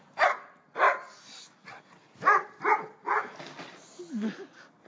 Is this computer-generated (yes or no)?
no